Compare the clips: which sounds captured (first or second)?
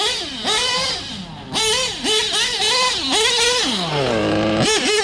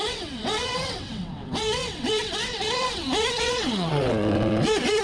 first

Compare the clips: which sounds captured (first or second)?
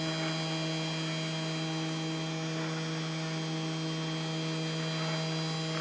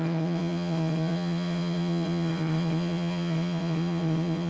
first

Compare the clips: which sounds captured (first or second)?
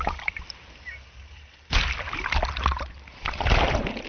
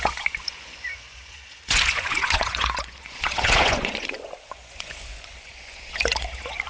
first